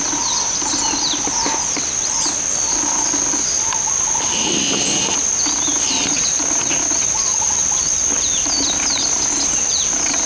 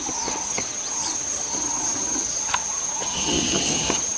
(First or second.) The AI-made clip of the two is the second